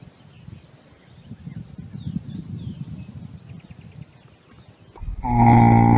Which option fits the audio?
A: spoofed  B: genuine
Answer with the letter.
B